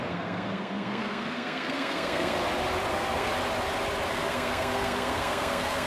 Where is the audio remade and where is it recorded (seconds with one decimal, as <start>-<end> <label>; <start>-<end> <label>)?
0.0-2.4 remade; 2.4-2.9 recorded; 2.9-3.3 remade; 3.3-4.1 recorded; 4.1-5.9 remade